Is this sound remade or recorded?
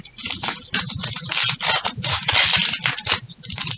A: recorded